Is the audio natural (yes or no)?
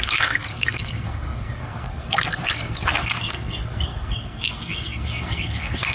no